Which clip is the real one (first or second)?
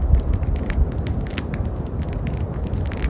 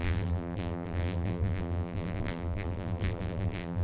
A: first